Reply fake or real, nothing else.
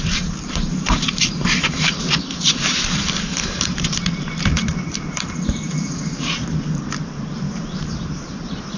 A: fake